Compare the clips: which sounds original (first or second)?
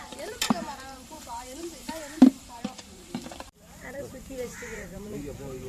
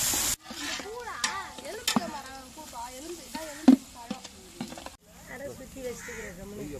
second